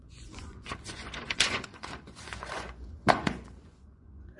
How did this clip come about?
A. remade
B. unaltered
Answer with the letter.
A